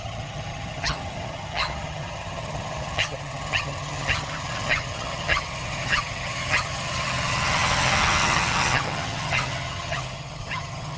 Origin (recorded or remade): remade